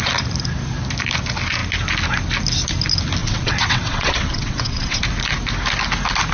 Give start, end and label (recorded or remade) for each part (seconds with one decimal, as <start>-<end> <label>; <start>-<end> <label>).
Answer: 0.0-3.2 recorded; 3.2-5.0 remade; 5.0-6.3 recorded